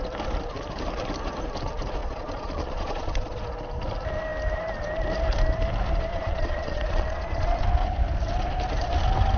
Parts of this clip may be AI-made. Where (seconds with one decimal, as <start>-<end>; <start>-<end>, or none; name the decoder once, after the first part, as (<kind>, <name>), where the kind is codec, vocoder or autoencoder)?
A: 2.0-3.4 (vocoder, Vocos); 6.1-7.6